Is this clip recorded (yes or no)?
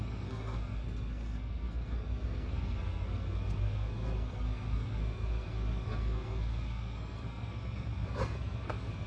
no